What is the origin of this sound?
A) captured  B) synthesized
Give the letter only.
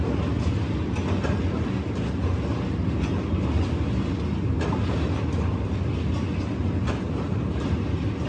A